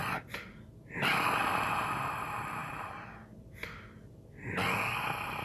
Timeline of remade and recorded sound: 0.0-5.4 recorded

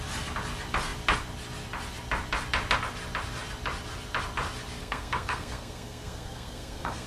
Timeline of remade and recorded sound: 0.0-4.8 recorded; 4.8-7.1 remade

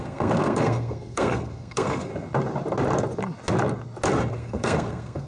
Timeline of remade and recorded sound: 0.0-2.1 remade; 2.1-4.3 recorded; 4.3-5.3 remade

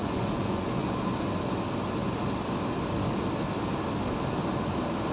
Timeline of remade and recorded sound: 0.0-1.0 remade; 1.0-5.1 recorded

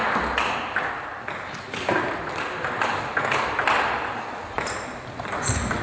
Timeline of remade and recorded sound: 0.0-5.8 recorded